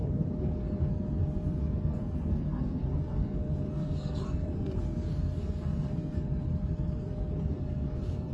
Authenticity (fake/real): fake